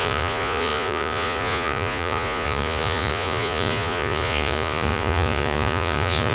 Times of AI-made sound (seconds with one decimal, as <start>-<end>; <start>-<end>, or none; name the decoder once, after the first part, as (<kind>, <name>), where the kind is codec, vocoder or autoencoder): 0.0-6.3 (vocoder, Vocos)